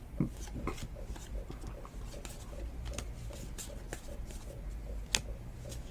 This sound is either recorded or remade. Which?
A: recorded